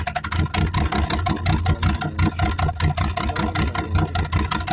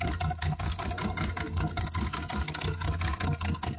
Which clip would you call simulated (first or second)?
second